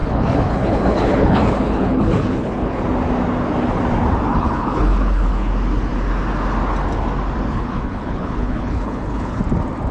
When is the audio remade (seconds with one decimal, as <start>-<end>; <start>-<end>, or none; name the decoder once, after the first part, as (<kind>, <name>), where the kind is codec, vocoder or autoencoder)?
0.0-2.8 (codec, HILCodec); 4.3-5.5; 7.5-9.4